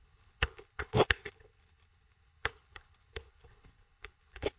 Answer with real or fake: fake